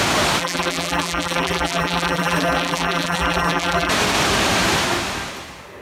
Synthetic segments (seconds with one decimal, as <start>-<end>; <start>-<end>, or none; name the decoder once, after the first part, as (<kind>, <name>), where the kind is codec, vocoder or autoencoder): 0.4-3.9 (vocoder, BigVGAN v2)